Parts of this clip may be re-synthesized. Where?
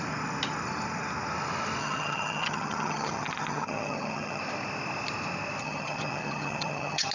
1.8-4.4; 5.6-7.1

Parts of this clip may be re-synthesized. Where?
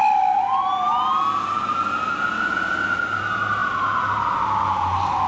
none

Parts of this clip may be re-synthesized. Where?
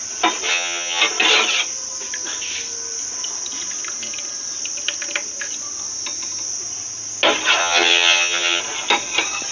0.5-1.0; 7.6-8.6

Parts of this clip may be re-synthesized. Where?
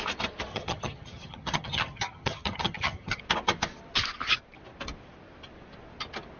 0.5-3.2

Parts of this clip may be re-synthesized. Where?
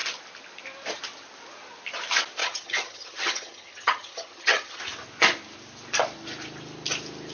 2.4-4.8